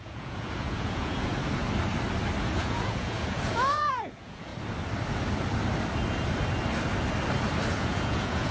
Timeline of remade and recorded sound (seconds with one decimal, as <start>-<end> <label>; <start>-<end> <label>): 0.0-1.3 remade; 1.3-2.4 recorded; 2.4-4.5 remade; 4.5-7.7 recorded; 7.7-8.5 remade